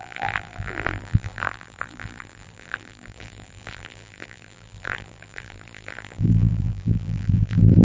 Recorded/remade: remade